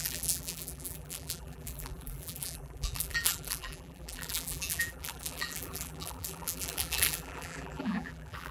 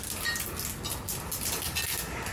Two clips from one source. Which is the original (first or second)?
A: second